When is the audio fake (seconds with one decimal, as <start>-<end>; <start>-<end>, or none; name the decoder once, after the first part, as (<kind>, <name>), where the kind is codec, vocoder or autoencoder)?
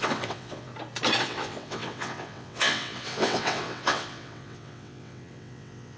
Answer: 0.0-0.7 (vocoder, WaveNeXt); 1.2-6.0